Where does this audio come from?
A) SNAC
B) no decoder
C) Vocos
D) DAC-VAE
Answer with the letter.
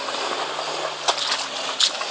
B